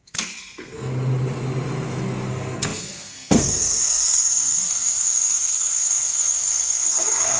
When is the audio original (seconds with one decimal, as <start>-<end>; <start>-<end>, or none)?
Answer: 0.9-2.3